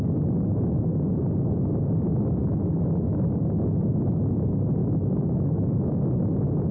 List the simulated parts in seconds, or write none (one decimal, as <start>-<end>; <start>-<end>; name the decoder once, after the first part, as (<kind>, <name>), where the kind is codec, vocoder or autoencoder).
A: 2.4-3.4 (autoencoder, DAC-VAE); 4.8-6.2